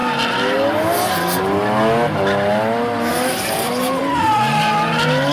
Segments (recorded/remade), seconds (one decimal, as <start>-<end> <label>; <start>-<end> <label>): 0.0-3.1 recorded; 3.1-4.0 remade; 4.0-5.3 recorded